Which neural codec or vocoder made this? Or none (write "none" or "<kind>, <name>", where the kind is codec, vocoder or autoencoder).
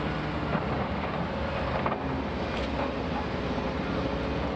none